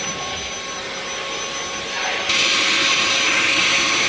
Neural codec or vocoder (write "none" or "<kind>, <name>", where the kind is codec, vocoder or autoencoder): none